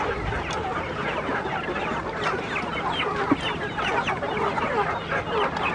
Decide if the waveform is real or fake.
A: real